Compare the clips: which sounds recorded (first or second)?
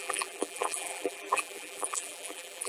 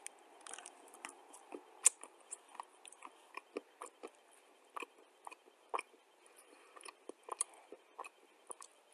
second